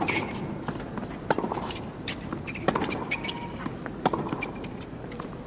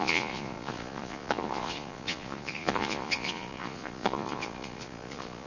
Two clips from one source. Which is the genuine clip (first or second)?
first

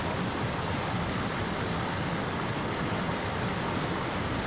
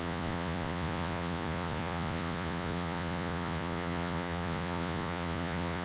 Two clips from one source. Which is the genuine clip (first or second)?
first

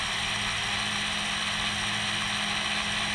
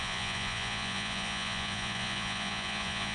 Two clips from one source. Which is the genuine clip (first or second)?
first